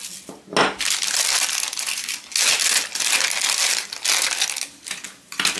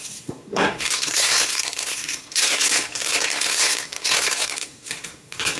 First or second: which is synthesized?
second